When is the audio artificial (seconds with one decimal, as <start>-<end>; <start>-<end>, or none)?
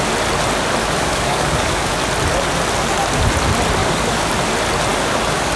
0.8-1.9; 3.8-4.3; 4.9-5.6